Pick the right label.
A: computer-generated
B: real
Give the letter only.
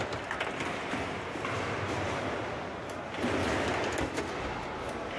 B